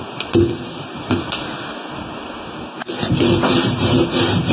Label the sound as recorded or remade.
recorded